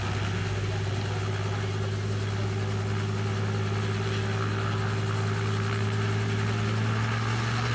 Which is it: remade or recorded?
recorded